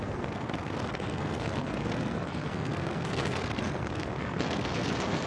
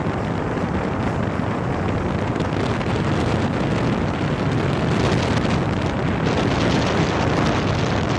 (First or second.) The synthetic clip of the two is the first